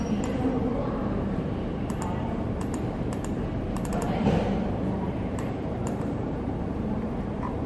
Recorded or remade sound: remade